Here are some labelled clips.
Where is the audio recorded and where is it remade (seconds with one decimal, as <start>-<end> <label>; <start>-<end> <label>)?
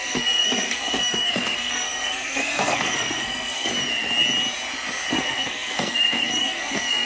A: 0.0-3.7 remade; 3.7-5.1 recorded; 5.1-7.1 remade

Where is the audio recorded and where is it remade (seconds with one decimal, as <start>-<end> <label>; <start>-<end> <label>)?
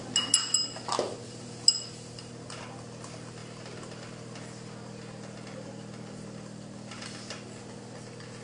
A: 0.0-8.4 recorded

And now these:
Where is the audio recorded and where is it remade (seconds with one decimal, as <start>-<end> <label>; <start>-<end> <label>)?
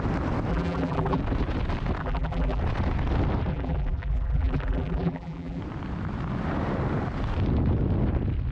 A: 0.0-0.5 recorded; 0.5-1.2 remade; 1.2-2.0 recorded; 2.0-2.6 remade; 2.6-3.5 recorded; 3.5-5.6 remade; 5.6-8.5 recorded